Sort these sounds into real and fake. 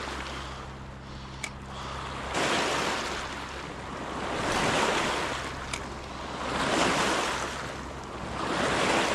real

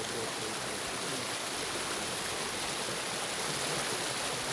real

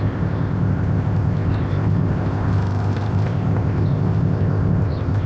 fake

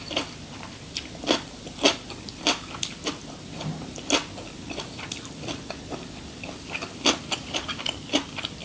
fake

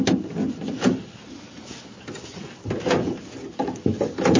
real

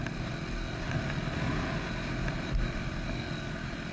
real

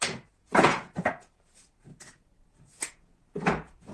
fake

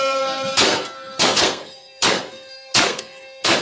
fake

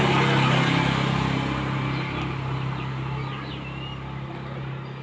real